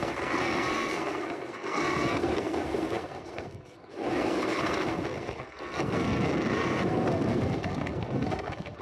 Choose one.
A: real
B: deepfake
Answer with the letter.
B